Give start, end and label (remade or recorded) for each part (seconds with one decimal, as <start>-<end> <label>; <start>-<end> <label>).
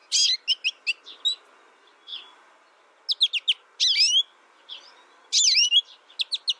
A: 0.0-6.6 recorded